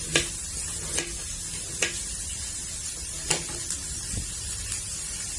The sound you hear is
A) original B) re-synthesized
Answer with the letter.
A